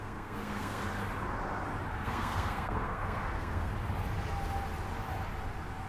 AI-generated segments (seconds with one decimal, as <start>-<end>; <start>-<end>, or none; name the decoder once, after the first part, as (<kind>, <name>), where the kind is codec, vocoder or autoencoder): 0.0-0.8 (codec, SNAC); 1.9-3.7